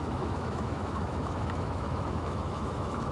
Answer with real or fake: fake